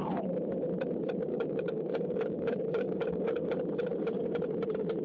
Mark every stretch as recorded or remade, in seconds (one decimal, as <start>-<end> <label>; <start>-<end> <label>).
0.0-1.3 recorded; 1.3-3.5 remade; 3.5-5.0 recorded